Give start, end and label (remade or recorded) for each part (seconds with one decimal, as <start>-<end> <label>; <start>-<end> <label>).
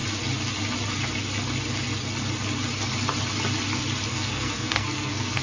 0.0-4.1 recorded; 4.1-5.4 remade